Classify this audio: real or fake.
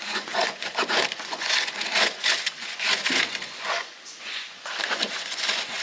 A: fake